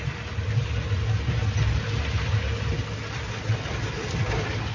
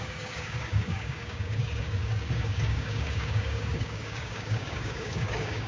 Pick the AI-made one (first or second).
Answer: second